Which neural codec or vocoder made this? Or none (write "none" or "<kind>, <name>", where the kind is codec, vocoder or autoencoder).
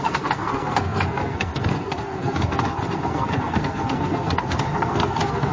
codec, SNAC